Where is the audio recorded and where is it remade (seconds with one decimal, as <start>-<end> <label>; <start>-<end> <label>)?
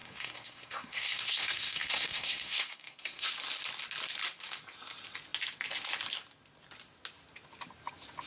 0.0-3.3 remade; 3.3-8.3 recorded